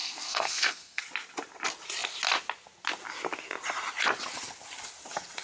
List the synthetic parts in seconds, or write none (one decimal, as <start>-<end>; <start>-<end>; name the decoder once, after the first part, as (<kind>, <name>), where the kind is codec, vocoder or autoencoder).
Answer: 0.0-1.0 (codec, SNAC)